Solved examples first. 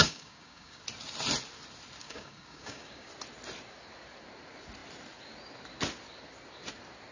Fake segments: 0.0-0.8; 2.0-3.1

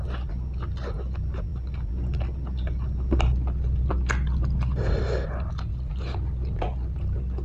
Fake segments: none

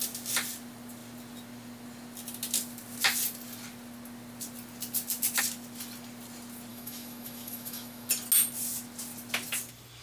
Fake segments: 6.7-8.1

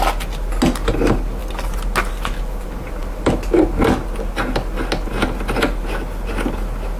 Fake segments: none

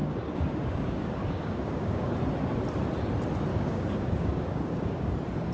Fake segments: 0.0-2.1; 3.5-5.1